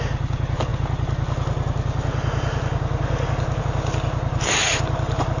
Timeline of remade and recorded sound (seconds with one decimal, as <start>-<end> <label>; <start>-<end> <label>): 0.0-5.4 recorded